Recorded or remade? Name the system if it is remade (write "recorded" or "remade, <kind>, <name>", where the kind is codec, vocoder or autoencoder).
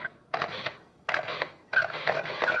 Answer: remade, codec, SNAC